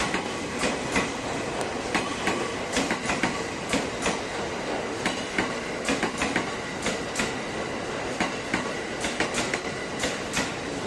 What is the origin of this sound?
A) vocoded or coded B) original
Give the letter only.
B